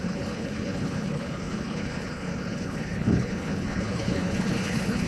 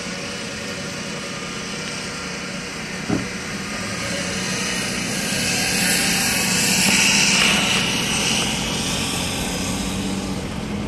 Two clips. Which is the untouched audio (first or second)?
second